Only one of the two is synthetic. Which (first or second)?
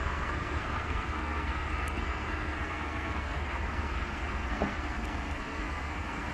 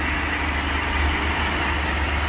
first